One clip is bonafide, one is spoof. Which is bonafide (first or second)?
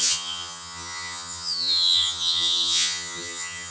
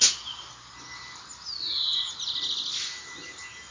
second